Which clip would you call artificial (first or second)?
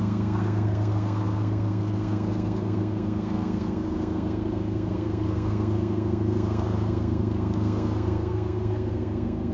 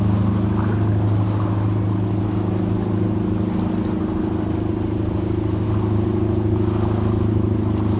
first